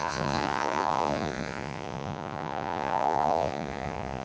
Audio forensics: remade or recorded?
remade